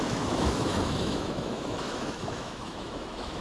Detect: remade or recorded remade